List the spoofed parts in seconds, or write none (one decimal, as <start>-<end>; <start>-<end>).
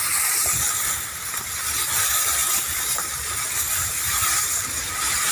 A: 0.0-0.4; 1.6-2.4